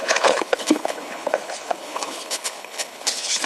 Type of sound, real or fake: fake